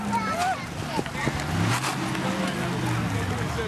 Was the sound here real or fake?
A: real